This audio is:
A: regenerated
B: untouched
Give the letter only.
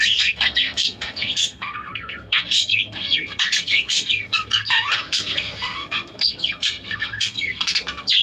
A